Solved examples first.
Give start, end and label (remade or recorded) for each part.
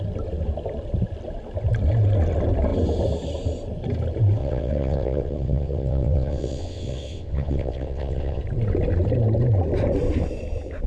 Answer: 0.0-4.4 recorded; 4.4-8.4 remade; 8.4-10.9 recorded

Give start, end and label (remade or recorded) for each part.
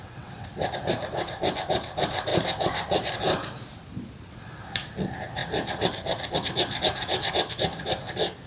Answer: 0.0-0.5 remade; 0.5-8.5 recorded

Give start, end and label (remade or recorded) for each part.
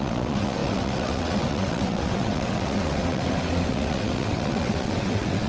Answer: 0.0-5.5 remade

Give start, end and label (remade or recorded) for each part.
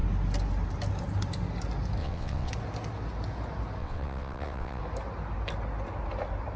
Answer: 0.0-2.0 recorded; 2.0-2.5 remade; 2.5-3.8 recorded; 3.8-4.8 remade; 4.8-6.6 recorded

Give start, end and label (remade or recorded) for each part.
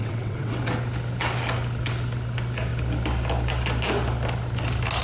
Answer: 0.0-0.5 remade; 0.5-5.0 recorded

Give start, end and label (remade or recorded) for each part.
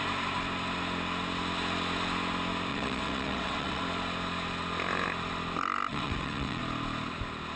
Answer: 0.0-2.7 recorded; 2.7-3.8 remade; 3.8-5.9 recorded; 5.9-6.6 remade; 6.6-7.6 recorded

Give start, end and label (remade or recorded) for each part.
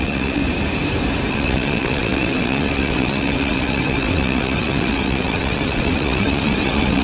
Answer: 0.0-0.4 remade; 0.4-1.3 recorded; 1.3-7.0 remade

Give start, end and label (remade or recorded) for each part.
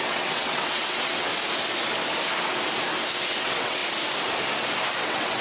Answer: 0.0-1.3 remade; 1.3-3.4 recorded; 3.4-3.8 remade; 3.8-5.0 recorded; 5.0-5.4 remade